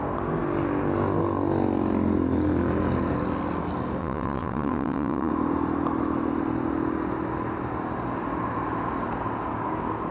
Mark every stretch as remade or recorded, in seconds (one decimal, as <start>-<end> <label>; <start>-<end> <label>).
0.0-4.0 recorded; 4.0-5.3 remade; 5.3-10.1 recorded